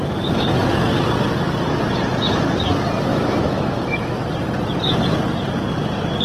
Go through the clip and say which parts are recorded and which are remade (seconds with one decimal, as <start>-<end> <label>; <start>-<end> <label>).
0.0-3.1 recorded; 3.1-4.2 remade; 4.2-6.2 recorded